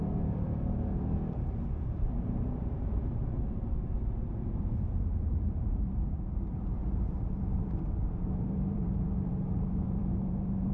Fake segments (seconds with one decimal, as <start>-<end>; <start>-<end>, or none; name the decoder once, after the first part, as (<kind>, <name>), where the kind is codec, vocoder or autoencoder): 0.0-10.7 (vocoder, BigVGAN v2)